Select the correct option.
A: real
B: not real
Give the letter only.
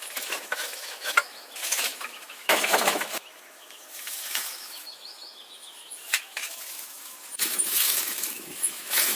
B